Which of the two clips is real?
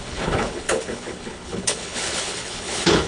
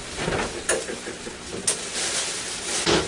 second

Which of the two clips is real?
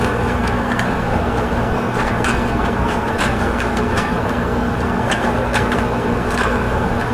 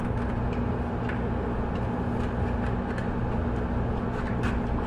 second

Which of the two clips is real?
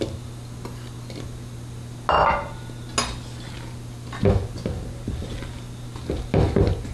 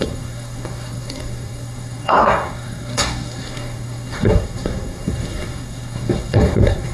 first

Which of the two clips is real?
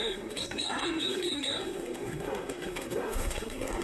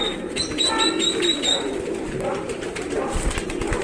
second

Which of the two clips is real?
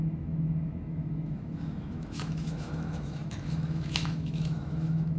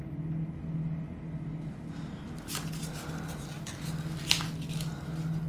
second